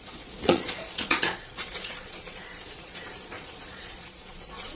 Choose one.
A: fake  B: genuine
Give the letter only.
A